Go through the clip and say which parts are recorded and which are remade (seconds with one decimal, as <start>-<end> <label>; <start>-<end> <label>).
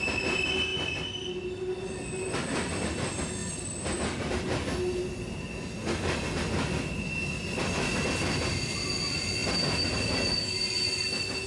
0.0-3.4 recorded; 3.4-4.0 remade; 4.0-9.4 recorded; 9.4-10.6 remade; 10.6-11.5 recorded